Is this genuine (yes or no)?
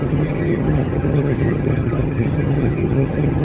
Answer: no